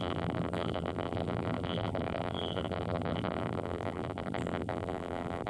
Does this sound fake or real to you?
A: fake